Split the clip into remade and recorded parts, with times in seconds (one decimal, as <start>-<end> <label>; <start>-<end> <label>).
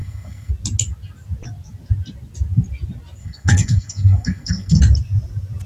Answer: 0.0-0.5 remade; 0.5-3.2 recorded; 3.2-4.8 remade; 4.8-5.7 recorded